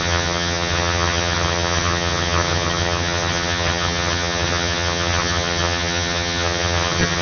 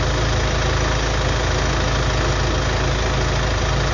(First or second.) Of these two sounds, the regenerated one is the first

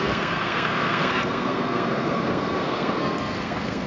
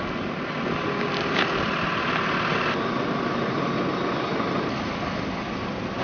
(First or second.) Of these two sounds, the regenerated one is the first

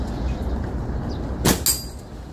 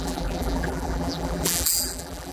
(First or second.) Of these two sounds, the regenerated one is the second